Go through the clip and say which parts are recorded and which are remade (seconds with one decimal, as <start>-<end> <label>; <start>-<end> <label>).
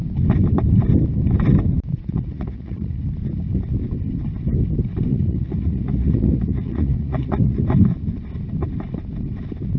0.0-1.9 recorded; 1.9-3.0 remade; 3.0-5.1 recorded; 5.1-7.6 remade; 7.6-9.8 recorded